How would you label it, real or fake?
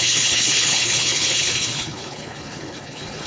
fake